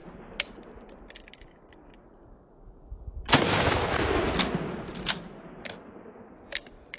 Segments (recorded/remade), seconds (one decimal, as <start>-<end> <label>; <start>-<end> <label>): 0.0-7.0 recorded

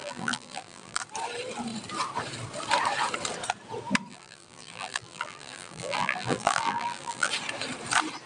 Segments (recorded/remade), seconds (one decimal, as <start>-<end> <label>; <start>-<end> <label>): 0.0-1.0 remade; 1.0-4.1 recorded; 4.1-7.3 remade; 7.3-8.3 recorded

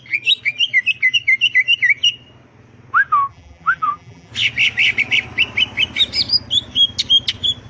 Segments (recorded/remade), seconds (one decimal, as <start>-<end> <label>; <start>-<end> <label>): 0.0-3.3 recorded; 3.3-4.3 remade; 4.3-7.7 recorded

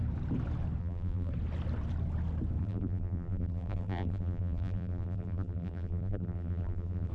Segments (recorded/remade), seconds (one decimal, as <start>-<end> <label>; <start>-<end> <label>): 0.0-0.8 recorded; 0.8-1.3 remade; 1.3-2.6 recorded; 2.6-7.1 remade

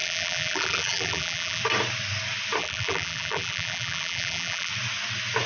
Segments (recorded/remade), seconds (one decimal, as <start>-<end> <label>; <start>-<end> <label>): 0.0-1.6 remade; 1.6-2.6 recorded; 2.6-4.7 remade; 4.7-5.5 recorded